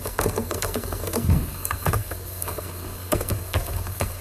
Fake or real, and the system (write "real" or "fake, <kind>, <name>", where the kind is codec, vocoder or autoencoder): fake, codec, SNAC